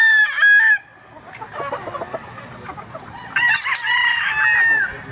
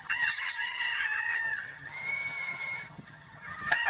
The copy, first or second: second